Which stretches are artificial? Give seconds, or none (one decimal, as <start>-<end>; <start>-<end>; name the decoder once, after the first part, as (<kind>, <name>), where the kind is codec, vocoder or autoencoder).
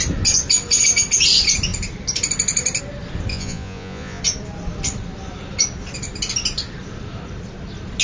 3.3-4.2 (vocoder, Vocos)